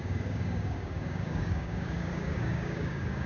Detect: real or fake fake